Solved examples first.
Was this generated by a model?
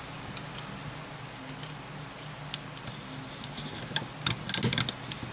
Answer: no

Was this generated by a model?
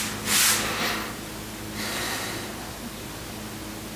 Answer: no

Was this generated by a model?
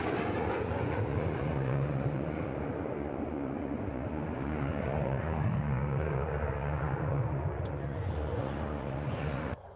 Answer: yes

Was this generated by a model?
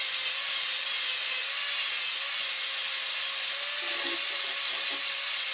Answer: no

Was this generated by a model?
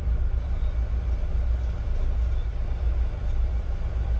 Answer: no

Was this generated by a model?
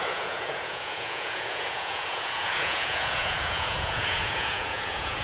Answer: yes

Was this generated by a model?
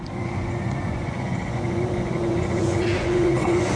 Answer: yes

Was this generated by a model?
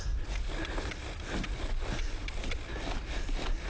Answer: no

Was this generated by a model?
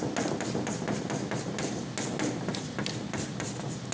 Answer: no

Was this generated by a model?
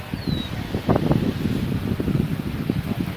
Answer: no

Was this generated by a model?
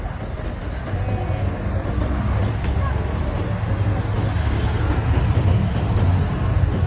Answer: no